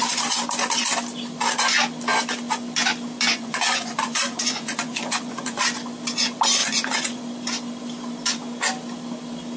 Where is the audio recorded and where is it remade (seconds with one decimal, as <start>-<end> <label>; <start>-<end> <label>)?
0.0-3.3 recorded; 3.3-5.6 remade; 5.6-6.6 recorded; 6.6-7.2 remade; 7.2-9.6 recorded

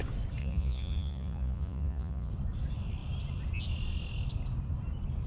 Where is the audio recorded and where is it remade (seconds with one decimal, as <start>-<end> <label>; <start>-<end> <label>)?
0.0-0.4 recorded; 0.4-2.3 remade; 2.3-5.3 recorded